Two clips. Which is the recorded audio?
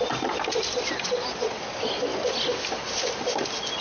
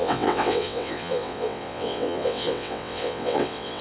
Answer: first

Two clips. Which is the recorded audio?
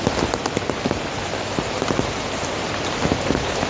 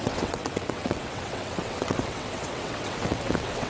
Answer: first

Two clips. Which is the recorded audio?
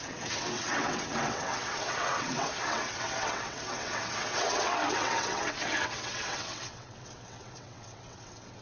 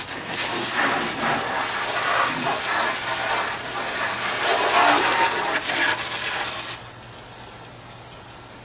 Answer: second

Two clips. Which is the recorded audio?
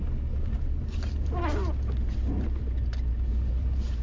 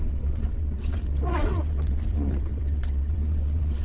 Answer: first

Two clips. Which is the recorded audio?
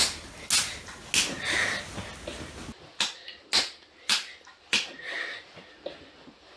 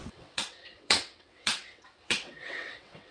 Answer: first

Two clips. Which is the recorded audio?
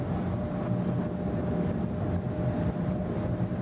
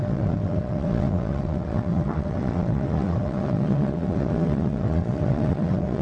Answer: first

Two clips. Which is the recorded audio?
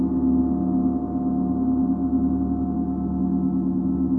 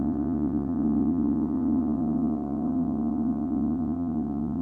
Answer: first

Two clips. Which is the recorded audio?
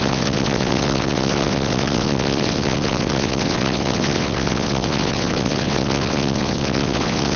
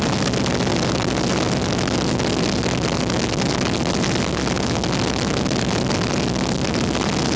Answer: second